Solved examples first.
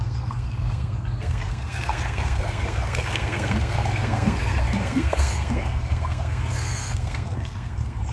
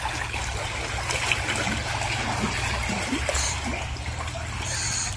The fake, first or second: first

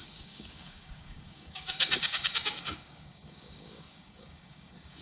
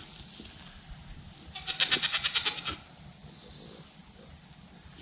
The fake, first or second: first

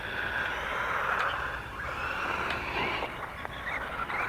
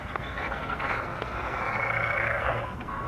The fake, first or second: second